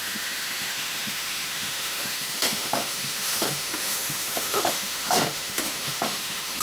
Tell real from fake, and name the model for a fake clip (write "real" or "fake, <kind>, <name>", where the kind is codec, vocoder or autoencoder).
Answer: fake, autoencoder, DAC-VAE